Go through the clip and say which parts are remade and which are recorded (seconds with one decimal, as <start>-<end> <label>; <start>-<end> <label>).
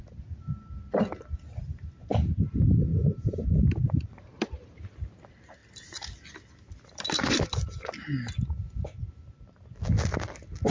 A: 0.0-2.9 recorded; 2.9-4.8 remade; 4.8-10.7 recorded